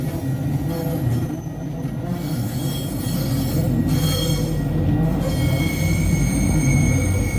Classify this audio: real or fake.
real